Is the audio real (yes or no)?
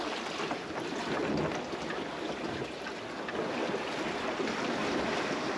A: yes